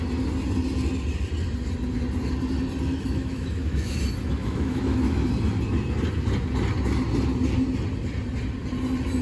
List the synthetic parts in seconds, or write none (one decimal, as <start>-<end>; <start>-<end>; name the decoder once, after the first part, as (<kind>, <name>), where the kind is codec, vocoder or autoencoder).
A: 2.9-4.0 (autoencoder, DAC-VAE); 4.4-5.3